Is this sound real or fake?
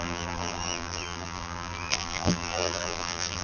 fake